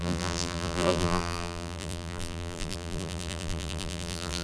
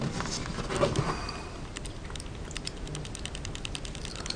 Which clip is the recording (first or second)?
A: second